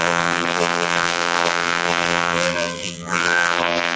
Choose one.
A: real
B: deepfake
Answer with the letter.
B